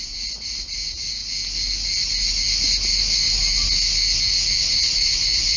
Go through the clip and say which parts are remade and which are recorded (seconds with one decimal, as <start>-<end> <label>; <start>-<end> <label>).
0.0-1.2 remade; 1.2-4.6 recorded; 4.6-5.6 remade